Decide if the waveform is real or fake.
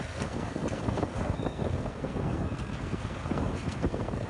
fake